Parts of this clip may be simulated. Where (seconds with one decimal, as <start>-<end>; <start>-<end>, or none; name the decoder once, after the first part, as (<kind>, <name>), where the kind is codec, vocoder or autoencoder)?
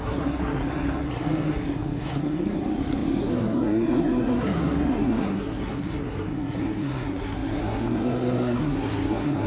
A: 0.0-9.5 (codec, SNAC)